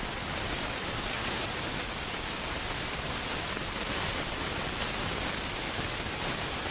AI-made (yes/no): no